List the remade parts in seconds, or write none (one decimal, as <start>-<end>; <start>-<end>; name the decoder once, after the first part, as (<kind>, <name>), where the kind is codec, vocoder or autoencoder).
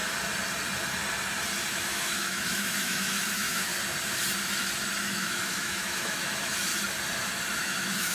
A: 1.7-3.7 (autoencoder, DAC-VAE); 5.0-6.7; 7.6-8.1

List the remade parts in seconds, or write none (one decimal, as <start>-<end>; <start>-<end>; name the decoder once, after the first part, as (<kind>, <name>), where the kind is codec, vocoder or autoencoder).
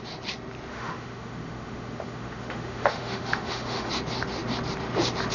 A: 0.7-3.9 (autoencoder, DAC-VAE)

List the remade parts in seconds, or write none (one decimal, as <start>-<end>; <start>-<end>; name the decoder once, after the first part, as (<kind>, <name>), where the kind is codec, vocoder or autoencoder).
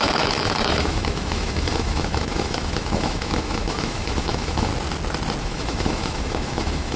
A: 0.0-4.7 (autoencoder, DAC-VAE); 5.4-7.0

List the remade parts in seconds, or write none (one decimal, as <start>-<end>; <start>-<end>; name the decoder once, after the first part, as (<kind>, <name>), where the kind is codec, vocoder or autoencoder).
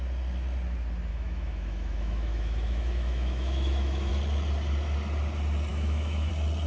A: 1.1-4.1 (autoencoder, DAC-VAE); 5.7-6.3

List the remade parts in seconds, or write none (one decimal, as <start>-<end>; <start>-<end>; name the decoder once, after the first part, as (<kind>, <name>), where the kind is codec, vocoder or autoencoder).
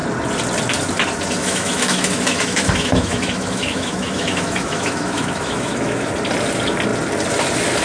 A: 1.4-6.1 (autoencoder, DAC-VAE)